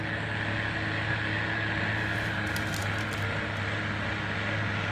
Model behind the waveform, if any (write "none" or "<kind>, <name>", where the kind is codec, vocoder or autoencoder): none